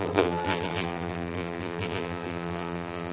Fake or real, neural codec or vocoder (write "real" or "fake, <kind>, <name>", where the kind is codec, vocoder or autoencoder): fake, vocoder, BigVGAN v2